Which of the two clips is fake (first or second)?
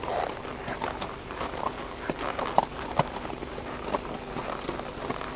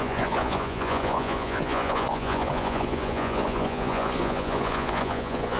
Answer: second